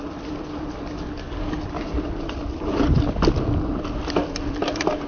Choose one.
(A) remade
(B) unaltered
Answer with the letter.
B